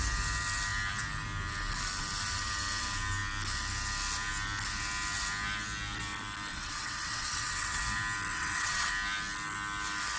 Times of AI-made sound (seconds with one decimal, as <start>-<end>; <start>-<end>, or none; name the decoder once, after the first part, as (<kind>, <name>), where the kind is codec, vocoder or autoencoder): 6.5-7.8 (vocoder, WaveNeXt); 8.3-8.9